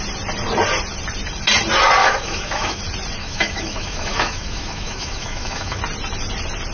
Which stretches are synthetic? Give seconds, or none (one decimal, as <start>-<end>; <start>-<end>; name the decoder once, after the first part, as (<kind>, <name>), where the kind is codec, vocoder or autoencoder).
2.0-2.8 (autoencoder, DAC-VAE); 3.2-5.8